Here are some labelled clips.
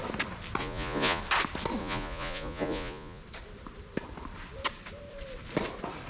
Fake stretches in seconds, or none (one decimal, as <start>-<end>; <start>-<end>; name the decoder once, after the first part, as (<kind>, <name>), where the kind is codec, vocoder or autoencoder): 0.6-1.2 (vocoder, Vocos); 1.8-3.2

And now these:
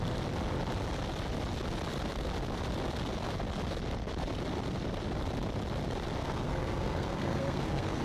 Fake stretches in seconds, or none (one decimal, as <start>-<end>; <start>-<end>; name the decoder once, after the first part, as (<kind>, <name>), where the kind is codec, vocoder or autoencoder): 6.2-8.0 (codec, SNAC)

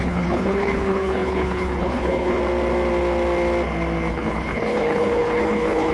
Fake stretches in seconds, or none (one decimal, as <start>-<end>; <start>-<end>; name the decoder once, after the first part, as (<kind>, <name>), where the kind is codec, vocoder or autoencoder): 0.0-2.4 (codec, HILCodec); 4.1-5.9

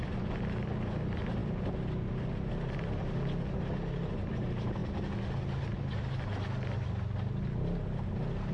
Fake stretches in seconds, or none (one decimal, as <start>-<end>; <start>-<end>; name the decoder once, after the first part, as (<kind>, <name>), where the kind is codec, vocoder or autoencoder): none

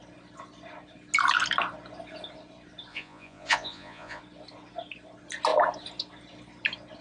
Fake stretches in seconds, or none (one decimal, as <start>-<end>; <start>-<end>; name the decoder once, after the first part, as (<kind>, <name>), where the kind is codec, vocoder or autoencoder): 2.9-4.2 (vocoder, Vocos)

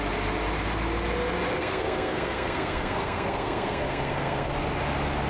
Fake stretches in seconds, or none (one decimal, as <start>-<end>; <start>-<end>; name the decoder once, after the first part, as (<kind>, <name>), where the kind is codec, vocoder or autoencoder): 1.6-4.5 (codec, SNAC)

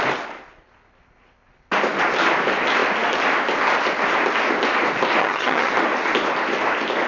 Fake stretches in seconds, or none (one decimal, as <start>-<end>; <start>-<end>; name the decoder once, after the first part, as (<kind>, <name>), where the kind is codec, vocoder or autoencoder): 5.2-5.7 (vocoder, HiFi-GAN)

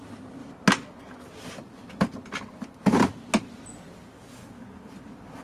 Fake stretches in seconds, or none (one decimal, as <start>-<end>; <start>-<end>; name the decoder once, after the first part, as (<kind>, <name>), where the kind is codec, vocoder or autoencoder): none